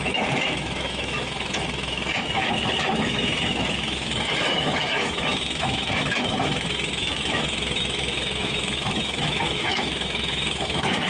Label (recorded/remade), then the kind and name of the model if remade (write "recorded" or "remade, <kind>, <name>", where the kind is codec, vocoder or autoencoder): remade, autoencoder, DAC-VAE